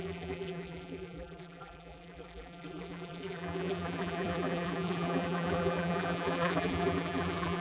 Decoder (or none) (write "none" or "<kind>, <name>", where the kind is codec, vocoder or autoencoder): vocoder, BigVGAN v2